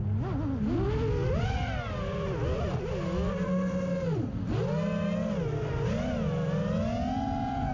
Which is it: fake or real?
real